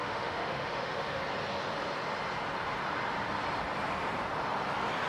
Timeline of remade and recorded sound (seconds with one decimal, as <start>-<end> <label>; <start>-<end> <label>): 0.0-1.2 remade; 1.2-5.1 recorded